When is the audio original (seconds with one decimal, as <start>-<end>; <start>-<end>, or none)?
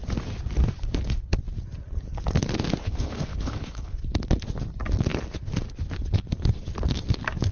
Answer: 0.0-2.8; 3.9-7.5